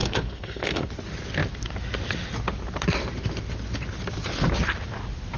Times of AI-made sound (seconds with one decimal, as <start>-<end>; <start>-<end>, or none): 0.0-0.9